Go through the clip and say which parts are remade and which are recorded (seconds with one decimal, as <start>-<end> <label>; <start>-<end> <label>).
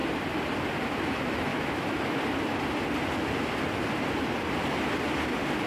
0.0-1.5 recorded; 1.5-2.2 remade; 2.2-5.7 recorded